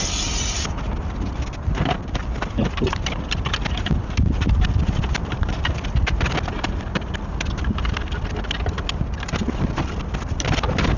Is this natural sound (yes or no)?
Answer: yes